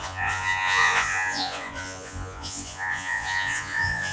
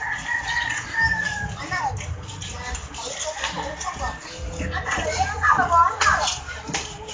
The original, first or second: second